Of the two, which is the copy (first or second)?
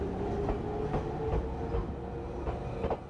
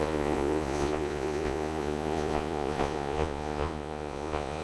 second